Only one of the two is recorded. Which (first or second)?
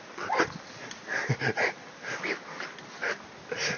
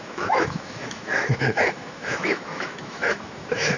first